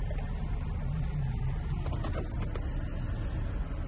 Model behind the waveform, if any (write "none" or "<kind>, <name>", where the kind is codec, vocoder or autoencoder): none